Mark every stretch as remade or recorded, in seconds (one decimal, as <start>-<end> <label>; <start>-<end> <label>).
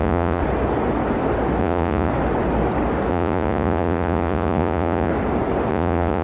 0.0-0.4 remade; 0.4-1.6 recorded; 1.6-2.1 remade; 2.1-3.1 recorded; 3.1-5.1 remade; 5.1-5.7 recorded; 5.7-6.2 remade